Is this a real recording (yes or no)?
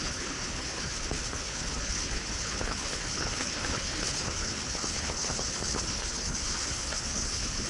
no